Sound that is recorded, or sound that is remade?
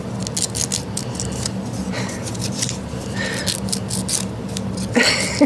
recorded